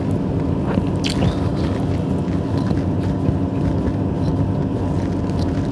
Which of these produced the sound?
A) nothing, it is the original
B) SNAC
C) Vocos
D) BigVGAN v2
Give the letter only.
A